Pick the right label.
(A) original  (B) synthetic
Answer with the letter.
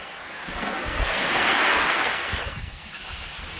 B